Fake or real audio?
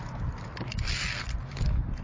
real